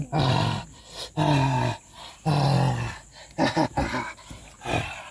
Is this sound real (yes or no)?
yes